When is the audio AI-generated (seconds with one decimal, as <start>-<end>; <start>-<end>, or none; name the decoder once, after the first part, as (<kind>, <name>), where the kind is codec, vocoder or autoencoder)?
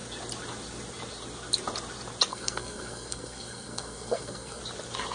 2.3-4.6 (codec, SNAC)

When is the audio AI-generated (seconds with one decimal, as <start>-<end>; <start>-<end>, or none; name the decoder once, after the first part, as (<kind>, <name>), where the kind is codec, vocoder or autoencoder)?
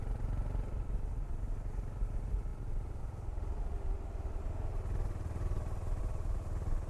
none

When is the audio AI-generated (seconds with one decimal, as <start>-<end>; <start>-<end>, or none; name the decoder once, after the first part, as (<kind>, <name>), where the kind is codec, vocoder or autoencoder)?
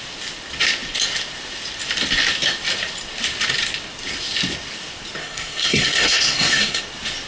5.2-6.8 (codec, SNAC)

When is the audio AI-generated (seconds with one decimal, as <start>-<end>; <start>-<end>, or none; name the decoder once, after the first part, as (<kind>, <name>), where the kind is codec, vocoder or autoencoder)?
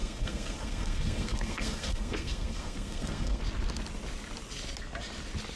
0.0-3.4 (codec, SNAC)